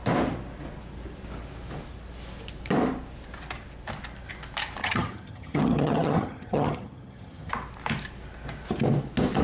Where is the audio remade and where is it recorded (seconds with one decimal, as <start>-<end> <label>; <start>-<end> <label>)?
0.0-4.8 recorded; 4.8-7.5 remade; 7.5-9.4 recorded